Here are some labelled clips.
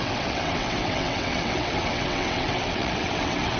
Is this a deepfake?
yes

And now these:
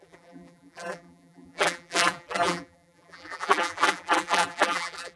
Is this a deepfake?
yes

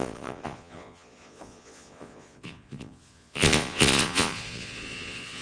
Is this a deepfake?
yes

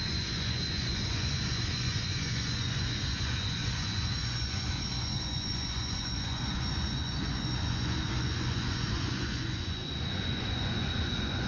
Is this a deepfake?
yes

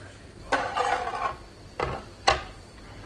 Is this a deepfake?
no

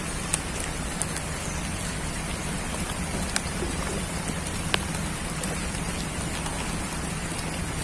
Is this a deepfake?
no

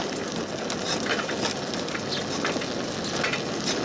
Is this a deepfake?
no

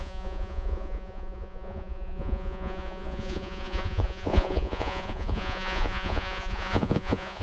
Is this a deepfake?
yes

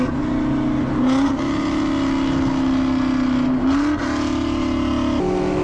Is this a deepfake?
no